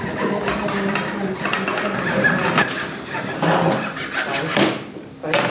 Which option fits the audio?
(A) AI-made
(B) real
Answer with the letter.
B